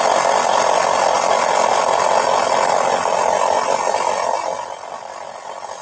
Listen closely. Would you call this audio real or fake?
real